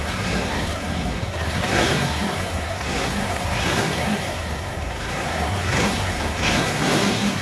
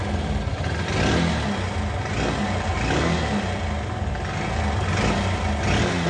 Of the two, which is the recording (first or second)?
second